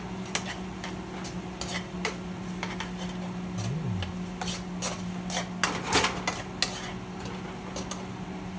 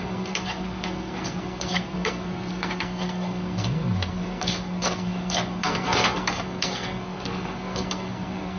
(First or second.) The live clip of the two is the first